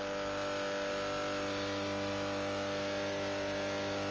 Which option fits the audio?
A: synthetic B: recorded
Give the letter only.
B